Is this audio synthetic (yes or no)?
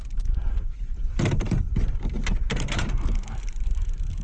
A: yes